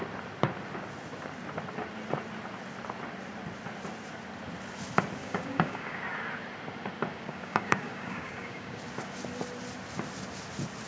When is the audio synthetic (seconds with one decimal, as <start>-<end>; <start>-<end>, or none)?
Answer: 5.2-6.0; 7.1-8.8